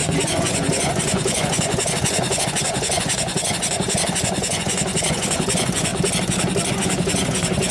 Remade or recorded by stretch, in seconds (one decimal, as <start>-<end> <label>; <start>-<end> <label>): 0.0-5.9 remade; 5.9-6.7 recorded; 6.7-7.7 remade